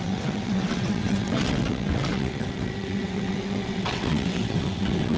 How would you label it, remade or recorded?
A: remade